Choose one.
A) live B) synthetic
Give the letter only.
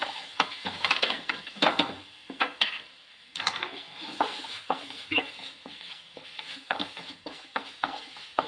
B